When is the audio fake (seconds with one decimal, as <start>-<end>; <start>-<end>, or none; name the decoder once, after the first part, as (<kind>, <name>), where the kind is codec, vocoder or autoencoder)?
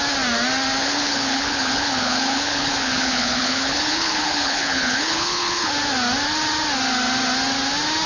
0.8-5.7 (codec, HILCodec)